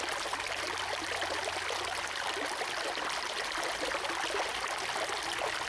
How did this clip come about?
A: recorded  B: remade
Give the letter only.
A